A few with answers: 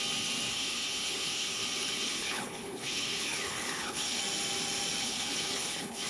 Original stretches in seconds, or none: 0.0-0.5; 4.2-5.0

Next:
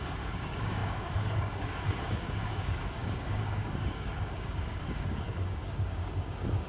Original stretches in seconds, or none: none

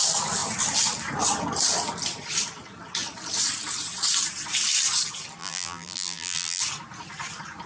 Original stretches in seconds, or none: 0.0-5.4; 6.6-7.7

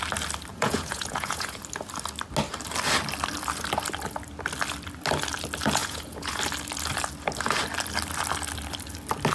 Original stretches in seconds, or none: 0.0-0.5; 1.6-5.8; 6.4-9.3

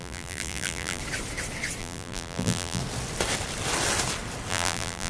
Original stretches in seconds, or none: 1.0-1.8; 2.8-4.5

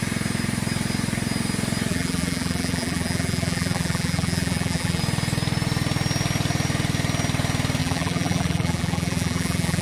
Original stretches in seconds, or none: 0.0-1.9; 5.0-7.8

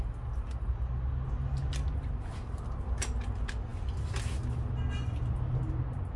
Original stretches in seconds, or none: 0.0-6.2